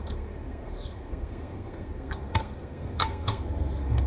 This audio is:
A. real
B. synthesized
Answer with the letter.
B